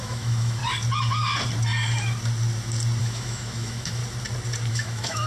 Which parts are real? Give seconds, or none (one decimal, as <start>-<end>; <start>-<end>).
0.6-3.0; 4.0-4.7

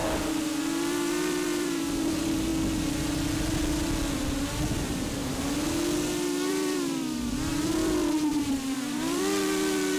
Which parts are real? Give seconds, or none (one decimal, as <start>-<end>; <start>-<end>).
0.0-0.6; 2.5-4.1; 5.2-6.5

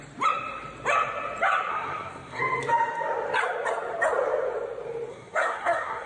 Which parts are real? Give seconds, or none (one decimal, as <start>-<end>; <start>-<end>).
0.0-1.7; 2.4-5.1